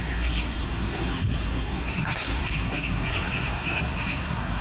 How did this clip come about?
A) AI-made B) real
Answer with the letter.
A